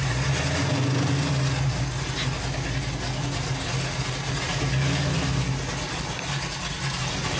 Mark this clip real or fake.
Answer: real